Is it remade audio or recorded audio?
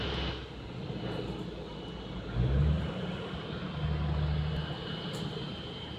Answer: recorded